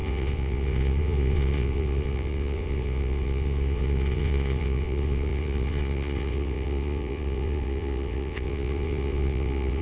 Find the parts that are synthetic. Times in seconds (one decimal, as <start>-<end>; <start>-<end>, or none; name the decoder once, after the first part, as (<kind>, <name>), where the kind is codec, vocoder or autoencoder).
0.0-9.8 (vocoder, WaveNeXt)